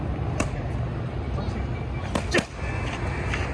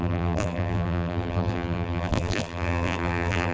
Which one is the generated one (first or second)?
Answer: second